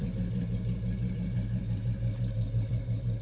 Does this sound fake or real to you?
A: fake